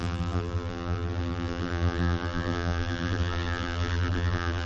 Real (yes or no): no